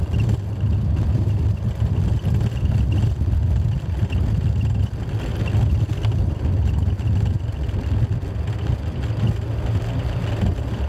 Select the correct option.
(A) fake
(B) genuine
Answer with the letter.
B